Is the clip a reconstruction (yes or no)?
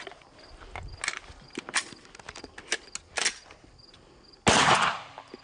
no